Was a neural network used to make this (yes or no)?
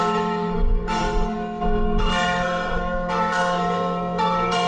yes